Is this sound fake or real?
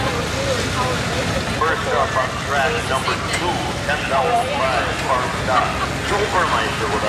real